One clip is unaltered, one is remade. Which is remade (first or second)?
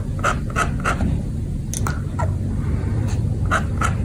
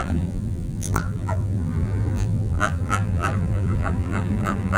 second